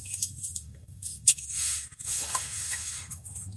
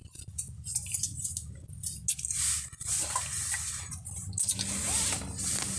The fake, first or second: first